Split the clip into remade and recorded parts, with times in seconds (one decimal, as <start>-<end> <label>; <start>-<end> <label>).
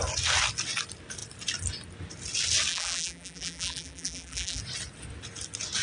0.0-2.7 recorded; 2.7-4.6 remade; 4.6-5.8 recorded